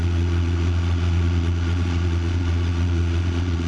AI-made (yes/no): yes